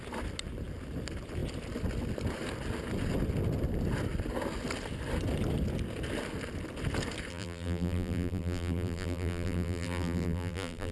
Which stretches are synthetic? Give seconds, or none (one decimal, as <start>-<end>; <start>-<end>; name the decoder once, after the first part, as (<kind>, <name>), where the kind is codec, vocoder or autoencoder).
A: 7.3-10.9 (vocoder, BigVGAN v2)